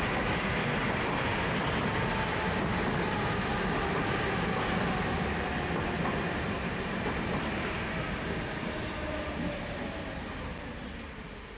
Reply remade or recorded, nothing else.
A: recorded